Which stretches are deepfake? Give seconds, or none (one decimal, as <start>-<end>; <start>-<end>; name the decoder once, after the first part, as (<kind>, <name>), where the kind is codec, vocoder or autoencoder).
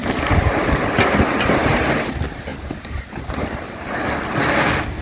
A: 0.0-0.6 (vocoder, BigVGAN v2); 2.5-4.1